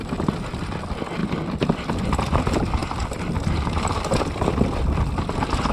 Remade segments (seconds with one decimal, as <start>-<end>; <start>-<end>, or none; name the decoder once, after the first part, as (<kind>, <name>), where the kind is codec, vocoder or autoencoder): 1.2-2.4 (vocoder, BigVGAN v2); 2.8-3.9